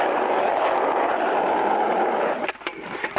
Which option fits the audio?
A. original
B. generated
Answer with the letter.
A